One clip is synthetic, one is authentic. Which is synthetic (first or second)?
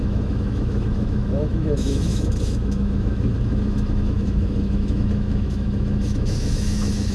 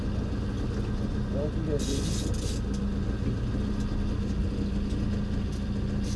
first